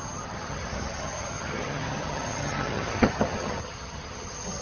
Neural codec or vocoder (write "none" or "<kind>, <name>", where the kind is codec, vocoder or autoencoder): vocoder, HiFi-GAN